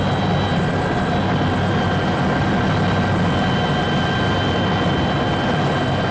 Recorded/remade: recorded